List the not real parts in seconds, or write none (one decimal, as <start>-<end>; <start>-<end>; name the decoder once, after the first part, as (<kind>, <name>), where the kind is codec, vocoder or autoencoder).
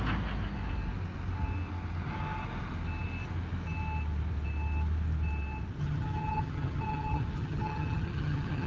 5.8-8.7 (vocoder, HiFi-GAN)